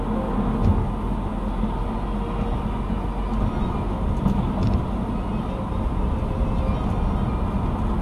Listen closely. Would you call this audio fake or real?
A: real